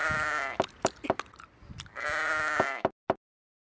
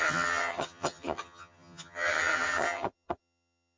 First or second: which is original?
first